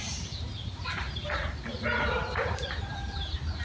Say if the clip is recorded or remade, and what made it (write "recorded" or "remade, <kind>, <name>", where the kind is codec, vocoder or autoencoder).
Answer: recorded